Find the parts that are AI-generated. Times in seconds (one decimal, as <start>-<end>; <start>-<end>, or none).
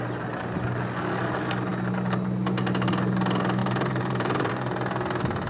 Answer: 3.6-4.5